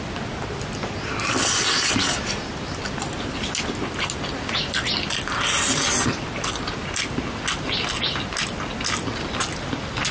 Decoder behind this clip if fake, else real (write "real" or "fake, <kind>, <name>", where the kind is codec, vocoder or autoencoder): real